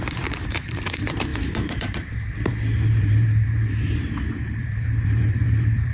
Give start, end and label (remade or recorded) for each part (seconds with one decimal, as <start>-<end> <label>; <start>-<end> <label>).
0.0-5.9 remade